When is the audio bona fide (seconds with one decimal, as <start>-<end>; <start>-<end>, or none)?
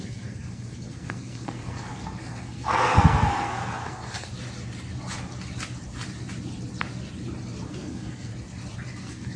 4.3-7.7; 8.3-9.0